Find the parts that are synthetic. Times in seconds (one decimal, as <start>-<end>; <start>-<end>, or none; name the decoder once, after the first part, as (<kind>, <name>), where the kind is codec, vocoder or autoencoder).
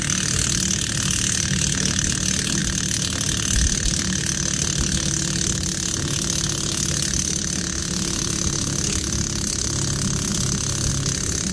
10.3-10.9 (vocoder, BigVGAN v2)